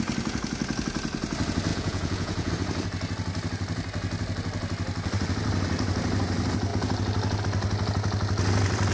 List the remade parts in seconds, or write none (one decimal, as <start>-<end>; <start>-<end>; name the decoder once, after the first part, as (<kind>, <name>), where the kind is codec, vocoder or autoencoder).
1.7-2.5 (vocoder, Vocos)